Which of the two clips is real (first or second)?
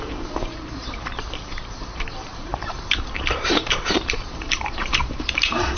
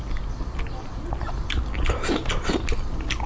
second